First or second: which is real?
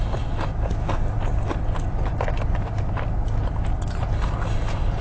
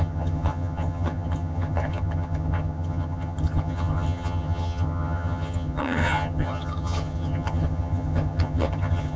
first